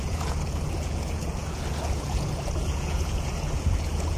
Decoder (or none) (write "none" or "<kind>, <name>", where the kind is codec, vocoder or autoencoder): vocoder, Vocos